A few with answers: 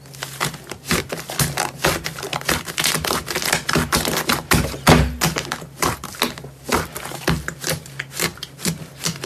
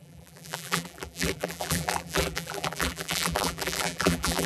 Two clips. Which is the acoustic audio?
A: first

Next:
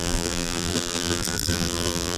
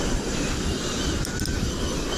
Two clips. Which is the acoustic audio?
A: second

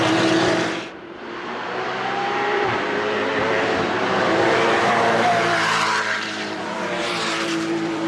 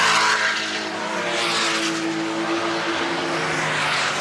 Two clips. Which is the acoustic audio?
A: second